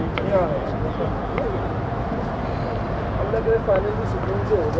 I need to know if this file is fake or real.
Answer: real